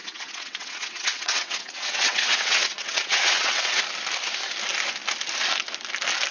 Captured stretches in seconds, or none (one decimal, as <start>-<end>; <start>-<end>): 3.8-6.3